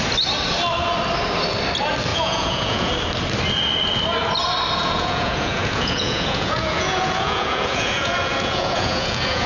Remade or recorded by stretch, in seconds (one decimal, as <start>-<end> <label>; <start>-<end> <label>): 0.0-2.1 recorded; 2.1-2.9 remade; 2.9-4.8 recorded; 4.8-9.5 remade